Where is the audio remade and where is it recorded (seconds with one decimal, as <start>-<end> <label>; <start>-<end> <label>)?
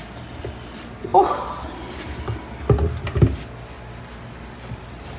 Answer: 0.0-5.2 recorded